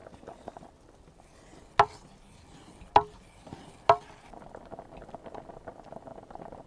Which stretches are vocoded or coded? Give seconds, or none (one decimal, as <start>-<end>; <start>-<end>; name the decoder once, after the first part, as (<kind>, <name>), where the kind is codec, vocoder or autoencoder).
6.1-6.7 (vocoder, BigVGAN v2)